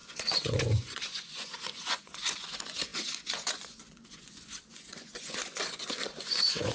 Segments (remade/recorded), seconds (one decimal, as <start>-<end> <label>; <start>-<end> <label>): 0.0-6.7 remade